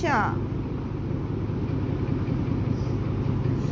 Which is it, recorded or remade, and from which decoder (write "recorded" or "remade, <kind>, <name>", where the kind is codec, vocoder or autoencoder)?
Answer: recorded